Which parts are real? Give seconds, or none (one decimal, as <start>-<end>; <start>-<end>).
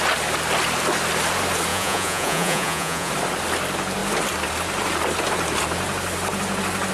0.0-1.7; 3.1-6.9